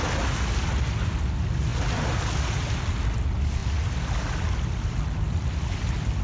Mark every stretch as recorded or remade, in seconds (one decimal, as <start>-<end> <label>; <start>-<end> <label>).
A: 0.0-6.2 recorded